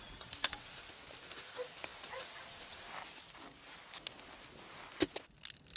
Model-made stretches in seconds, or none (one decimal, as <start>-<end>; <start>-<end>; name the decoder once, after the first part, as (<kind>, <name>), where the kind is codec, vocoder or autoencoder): none